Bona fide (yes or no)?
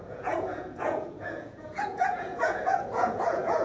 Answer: no